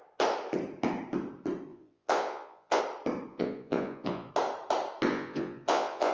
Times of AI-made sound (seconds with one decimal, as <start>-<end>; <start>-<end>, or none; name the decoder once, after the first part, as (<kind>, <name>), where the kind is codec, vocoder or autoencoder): 1.7-2.8 (vocoder, Vocos); 3.3-4.3; 5.1-6.1